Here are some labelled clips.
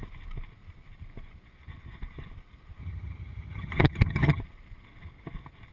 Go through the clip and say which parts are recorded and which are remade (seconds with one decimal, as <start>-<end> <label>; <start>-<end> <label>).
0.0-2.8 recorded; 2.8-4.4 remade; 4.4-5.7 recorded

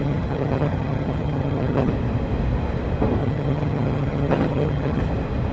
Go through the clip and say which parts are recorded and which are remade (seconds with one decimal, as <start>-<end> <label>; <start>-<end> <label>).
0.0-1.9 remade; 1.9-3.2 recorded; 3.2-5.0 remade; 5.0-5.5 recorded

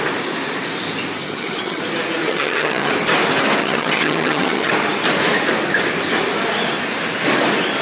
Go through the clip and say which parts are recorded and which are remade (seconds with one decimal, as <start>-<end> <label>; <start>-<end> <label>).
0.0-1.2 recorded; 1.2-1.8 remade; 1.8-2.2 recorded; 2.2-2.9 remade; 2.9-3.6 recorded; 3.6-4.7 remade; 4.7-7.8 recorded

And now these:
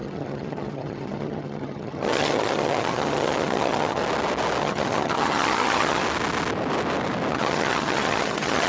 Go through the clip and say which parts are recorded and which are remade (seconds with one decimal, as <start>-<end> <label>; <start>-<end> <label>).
0.0-4.0 remade; 4.0-4.6 recorded; 4.6-6.0 remade; 6.0-7.3 recorded; 7.3-8.7 remade

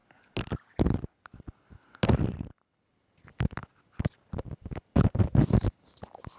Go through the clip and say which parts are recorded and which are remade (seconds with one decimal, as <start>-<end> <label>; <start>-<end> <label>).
0.0-6.4 recorded

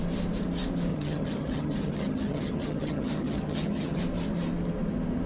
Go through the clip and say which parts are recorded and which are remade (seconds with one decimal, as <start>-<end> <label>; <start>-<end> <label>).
0.0-0.9 recorded; 0.9-4.0 remade; 4.0-5.3 recorded

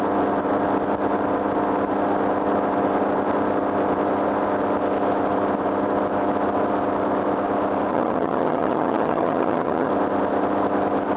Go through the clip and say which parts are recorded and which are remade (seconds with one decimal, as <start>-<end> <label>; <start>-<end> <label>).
0.0-7.9 recorded; 7.9-9.9 remade; 9.9-11.2 recorded

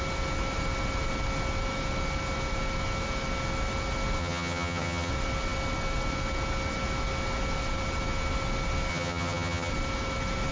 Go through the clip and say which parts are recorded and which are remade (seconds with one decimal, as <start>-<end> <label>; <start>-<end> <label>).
0.0-4.2 recorded; 4.2-5.1 remade; 5.1-8.9 recorded; 8.9-9.7 remade; 9.7-10.5 recorded